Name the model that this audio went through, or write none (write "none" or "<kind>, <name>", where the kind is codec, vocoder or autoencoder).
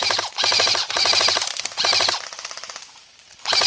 vocoder, BigVGAN v2